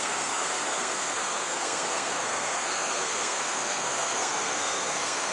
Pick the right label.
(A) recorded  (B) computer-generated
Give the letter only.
B